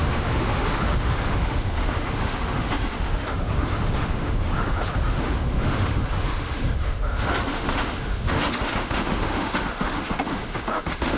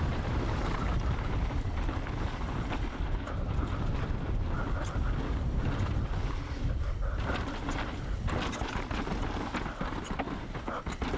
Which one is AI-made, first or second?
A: first